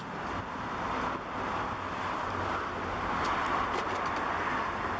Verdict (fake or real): real